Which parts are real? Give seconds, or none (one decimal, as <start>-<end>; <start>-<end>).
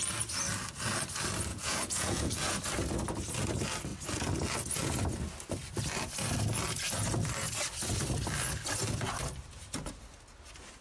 0.0-1.5; 2.6-10.8